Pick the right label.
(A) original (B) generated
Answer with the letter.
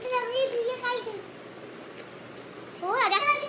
A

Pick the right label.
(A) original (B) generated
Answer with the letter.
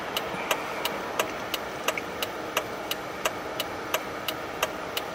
B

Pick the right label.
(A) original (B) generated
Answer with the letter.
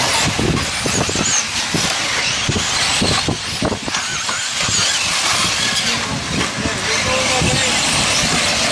A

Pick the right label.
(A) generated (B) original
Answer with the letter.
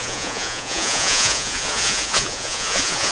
A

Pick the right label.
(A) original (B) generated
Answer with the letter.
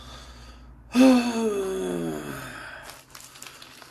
A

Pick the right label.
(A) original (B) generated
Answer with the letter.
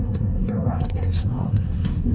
B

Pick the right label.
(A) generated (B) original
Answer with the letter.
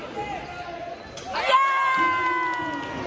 B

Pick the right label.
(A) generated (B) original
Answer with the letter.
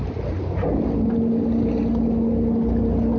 B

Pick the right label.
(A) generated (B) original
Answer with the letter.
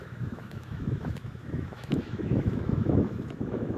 A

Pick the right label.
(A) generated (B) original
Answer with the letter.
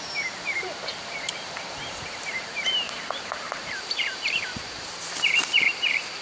A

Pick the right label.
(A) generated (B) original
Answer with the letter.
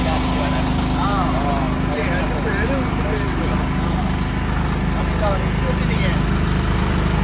B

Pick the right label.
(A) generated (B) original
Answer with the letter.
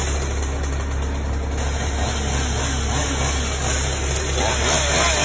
B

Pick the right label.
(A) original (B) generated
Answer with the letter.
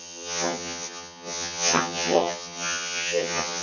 B